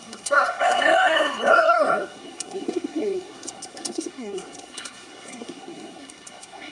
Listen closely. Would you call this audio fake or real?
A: fake